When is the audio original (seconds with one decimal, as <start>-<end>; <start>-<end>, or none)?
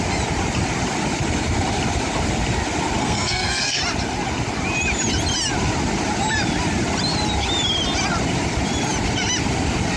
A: 0.0-3.0; 3.8-10.0